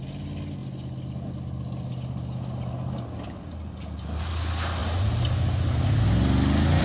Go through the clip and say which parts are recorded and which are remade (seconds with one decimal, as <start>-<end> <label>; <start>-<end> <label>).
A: 0.0-6.8 recorded